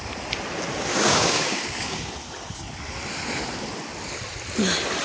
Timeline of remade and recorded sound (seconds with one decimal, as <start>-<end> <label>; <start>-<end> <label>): 0.0-0.9 recorded; 0.9-2.1 remade; 2.1-5.0 recorded